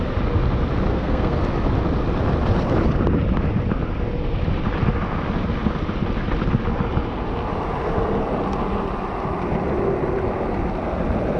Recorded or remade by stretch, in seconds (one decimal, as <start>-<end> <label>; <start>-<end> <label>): 0.0-0.9 recorded; 0.9-1.4 remade; 1.4-11.4 recorded